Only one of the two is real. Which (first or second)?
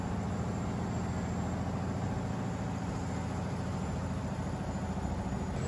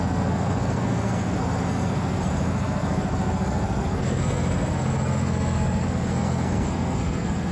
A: first